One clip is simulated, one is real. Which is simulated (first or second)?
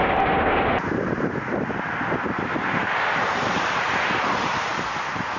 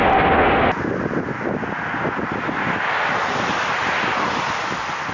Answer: first